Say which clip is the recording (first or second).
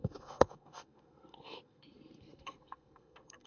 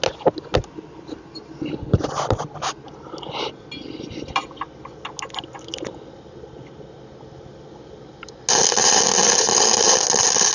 second